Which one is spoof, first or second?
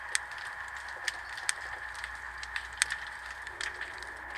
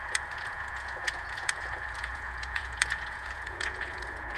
second